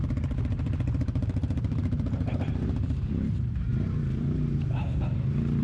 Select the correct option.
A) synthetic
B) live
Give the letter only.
A